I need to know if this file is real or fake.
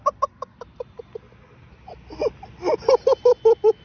real